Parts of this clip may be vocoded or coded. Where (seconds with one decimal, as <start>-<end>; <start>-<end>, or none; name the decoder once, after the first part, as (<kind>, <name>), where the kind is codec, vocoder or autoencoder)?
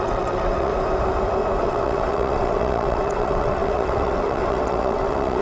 0.0-0.7 (vocoder, WaveNeXt); 1.6-5.4